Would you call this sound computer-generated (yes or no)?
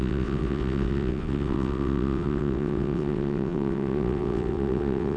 yes